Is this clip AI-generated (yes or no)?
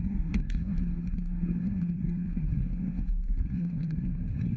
yes